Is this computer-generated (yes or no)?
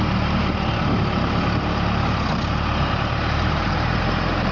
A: yes